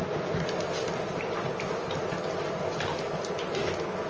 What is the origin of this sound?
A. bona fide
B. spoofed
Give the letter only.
A